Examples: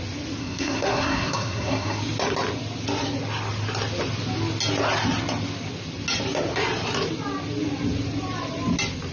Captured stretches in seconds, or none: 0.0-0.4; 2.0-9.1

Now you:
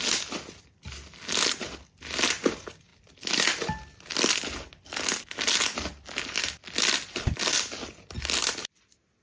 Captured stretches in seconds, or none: 0.0-9.2

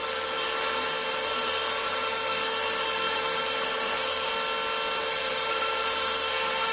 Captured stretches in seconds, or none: 4.3-5.0

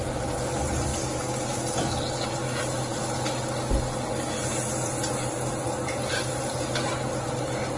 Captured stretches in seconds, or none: 0.0-7.8

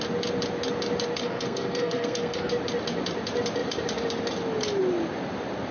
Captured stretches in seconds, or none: 0.0-1.2; 2.5-5.7

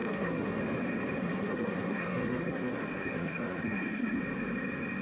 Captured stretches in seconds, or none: 0.6-1.2; 4.2-5.0

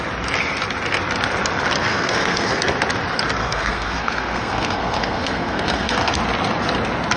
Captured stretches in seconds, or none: 0.0-1.9; 2.6-3.4; 6.2-7.2